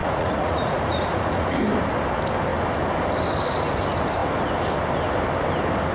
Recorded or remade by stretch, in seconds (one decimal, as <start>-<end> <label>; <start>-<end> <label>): 0.0-1.6 remade; 1.6-5.9 recorded